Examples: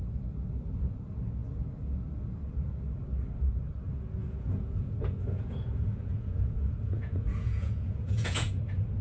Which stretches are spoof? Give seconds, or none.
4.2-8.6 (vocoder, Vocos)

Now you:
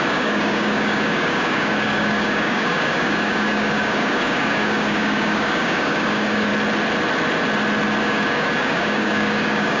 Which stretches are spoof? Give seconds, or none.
0.0-6.5 (codec, DAC); 8.0-9.8